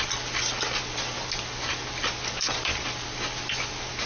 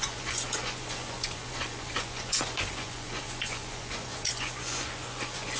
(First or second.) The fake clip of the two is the second